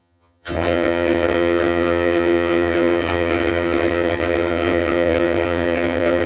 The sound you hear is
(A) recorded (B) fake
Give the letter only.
B